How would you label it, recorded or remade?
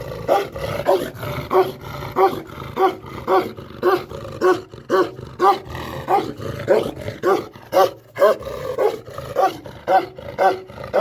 recorded